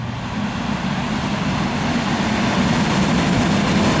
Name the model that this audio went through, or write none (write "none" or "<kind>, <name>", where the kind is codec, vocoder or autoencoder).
none